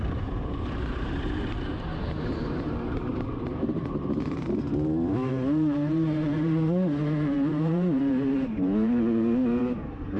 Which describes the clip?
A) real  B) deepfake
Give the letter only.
B